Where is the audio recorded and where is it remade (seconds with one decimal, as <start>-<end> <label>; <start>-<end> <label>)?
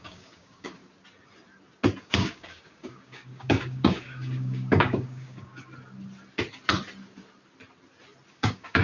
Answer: 0.0-0.8 remade; 0.8-2.0 recorded; 2.0-5.5 remade; 5.5-8.3 recorded; 8.3-8.8 remade